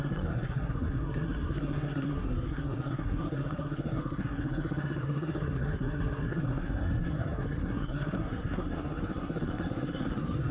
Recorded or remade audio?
remade